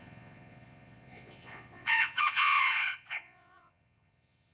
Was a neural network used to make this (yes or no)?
yes